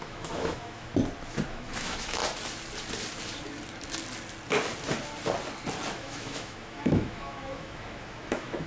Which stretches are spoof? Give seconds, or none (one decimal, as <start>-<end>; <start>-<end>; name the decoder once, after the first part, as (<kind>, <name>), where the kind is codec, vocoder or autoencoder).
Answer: 0.0-0.9 (autoencoder, DAC-VAE); 1.5-2.2; 5.9-8.7